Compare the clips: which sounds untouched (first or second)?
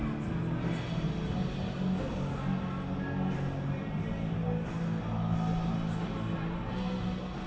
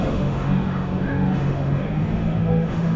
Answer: first